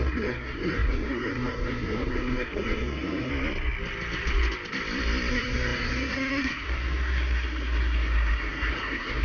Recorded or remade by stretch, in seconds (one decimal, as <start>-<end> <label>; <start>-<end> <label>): 0.0-3.3 remade; 3.3-5.3 recorded; 5.3-9.2 remade